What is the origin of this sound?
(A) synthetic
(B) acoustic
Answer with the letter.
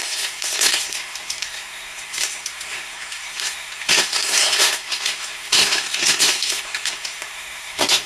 A